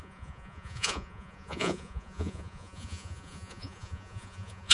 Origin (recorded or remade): remade